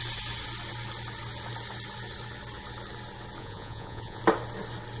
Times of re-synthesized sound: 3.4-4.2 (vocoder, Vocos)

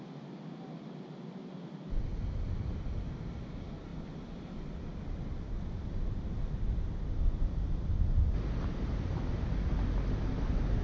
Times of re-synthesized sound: none

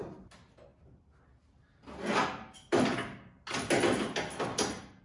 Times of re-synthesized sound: none

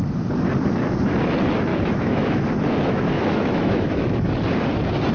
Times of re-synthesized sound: 1.7-4.3 (autoencoder, DAC-VAE)

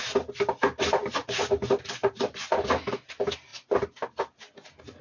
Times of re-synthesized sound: none

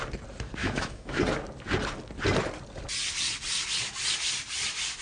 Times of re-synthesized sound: 0.6-1.2 (autoencoder, DAC-VAE)

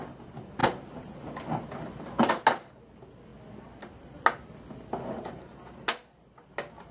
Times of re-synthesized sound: none

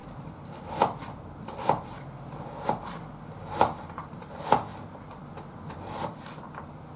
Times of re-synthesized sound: 0.0-3.4 (vocoder, BigVGAN v2); 4.7-7.0